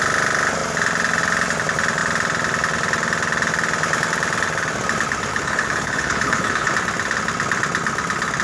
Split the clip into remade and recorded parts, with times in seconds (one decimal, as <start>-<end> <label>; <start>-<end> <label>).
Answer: 0.0-5.3 recorded; 5.3-6.7 remade; 6.7-8.4 recorded